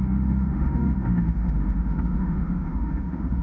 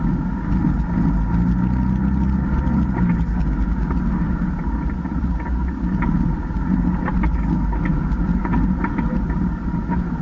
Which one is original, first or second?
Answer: second